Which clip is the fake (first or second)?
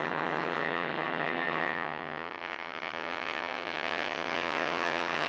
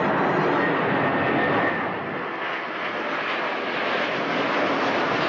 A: first